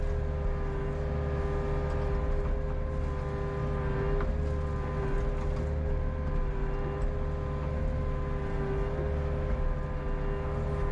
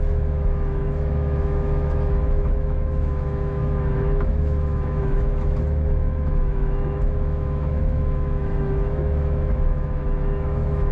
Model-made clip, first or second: second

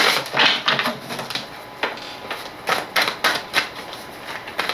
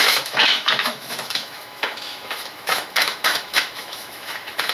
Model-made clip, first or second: second